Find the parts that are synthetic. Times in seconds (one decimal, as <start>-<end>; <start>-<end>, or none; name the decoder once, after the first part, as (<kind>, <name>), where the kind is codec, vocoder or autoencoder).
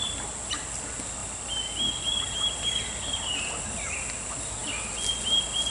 none